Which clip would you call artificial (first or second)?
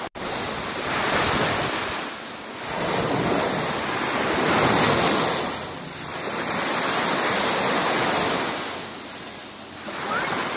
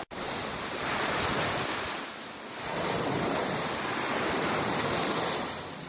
second